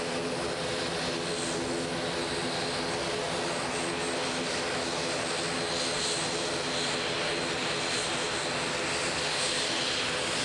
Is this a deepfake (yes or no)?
no